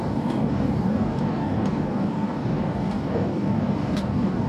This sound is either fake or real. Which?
fake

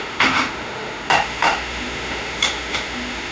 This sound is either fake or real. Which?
fake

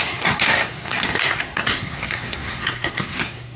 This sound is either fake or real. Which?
fake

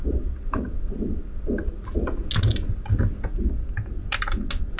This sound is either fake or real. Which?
real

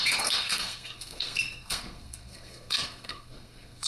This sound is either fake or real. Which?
fake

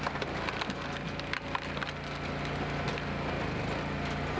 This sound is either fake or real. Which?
real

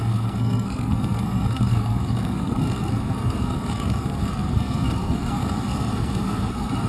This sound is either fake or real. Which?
fake